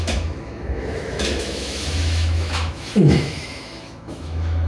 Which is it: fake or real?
fake